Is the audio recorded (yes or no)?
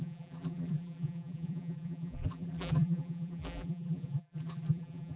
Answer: no